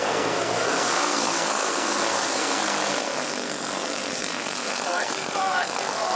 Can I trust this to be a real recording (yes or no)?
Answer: no